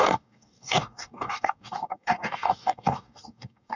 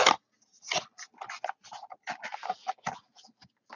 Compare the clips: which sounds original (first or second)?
second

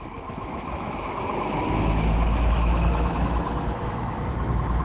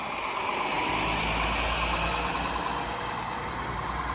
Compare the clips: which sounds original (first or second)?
second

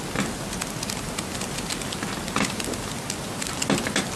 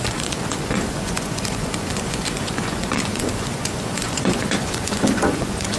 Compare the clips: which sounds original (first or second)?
first